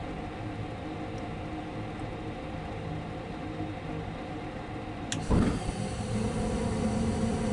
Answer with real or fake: real